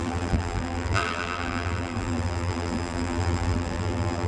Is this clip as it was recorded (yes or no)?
no